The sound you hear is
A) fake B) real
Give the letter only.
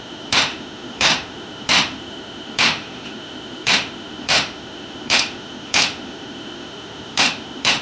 A